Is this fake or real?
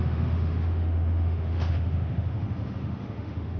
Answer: fake